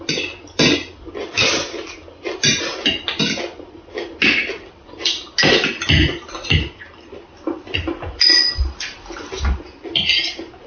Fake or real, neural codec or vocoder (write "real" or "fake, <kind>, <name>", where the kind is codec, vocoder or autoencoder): real